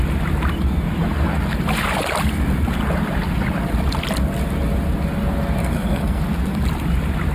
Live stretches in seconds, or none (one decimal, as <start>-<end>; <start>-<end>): 0.0-5.6; 6.2-7.3